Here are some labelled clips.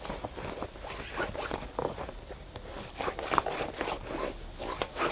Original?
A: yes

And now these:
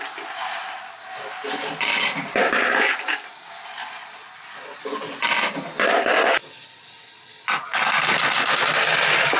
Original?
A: yes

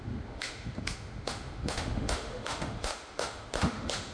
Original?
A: no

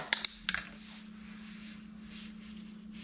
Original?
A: yes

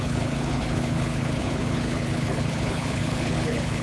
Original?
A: no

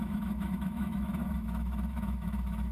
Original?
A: no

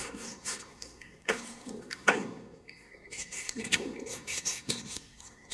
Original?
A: no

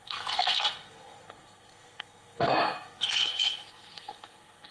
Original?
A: no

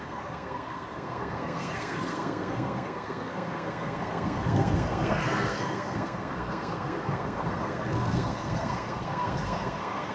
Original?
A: no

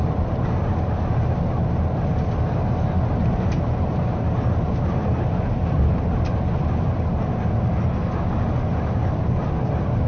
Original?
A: yes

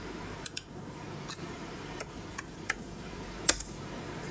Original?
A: no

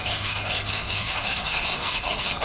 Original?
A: no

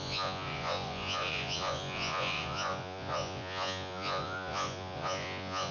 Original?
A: no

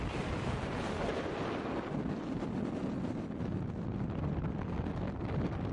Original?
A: yes